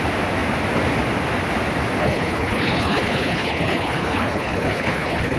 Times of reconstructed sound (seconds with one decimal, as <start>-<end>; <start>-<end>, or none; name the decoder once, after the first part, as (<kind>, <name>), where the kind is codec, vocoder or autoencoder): 2.0-5.4 (codec, HILCodec)